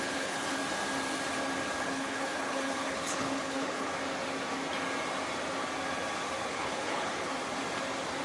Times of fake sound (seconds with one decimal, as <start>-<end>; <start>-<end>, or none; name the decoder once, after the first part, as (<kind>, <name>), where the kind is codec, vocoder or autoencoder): 0.0-0.6 (codec, HILCodec); 1.8-3.9; 6.5-7.3